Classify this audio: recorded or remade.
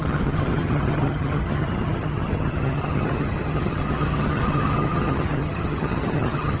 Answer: remade